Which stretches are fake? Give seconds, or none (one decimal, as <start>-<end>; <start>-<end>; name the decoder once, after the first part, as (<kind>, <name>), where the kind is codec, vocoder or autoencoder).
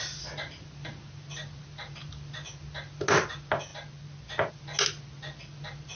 none